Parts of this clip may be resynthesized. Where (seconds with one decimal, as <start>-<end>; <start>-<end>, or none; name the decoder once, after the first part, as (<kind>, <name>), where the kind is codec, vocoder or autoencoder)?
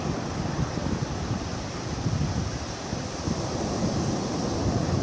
none